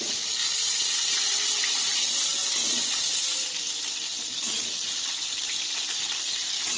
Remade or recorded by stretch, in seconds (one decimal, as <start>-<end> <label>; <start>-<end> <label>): 0.0-6.8 recorded